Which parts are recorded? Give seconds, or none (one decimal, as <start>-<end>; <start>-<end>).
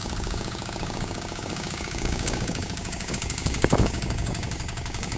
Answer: none